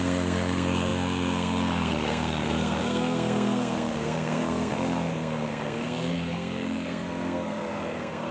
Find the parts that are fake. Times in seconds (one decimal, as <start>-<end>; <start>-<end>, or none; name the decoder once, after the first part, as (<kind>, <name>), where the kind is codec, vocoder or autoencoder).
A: 0.0-8.3 (codec, SNAC)